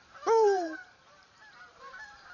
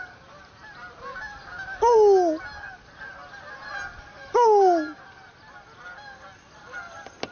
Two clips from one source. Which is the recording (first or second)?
second